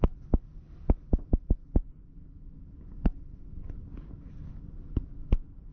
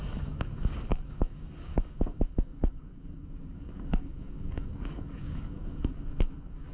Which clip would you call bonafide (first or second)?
first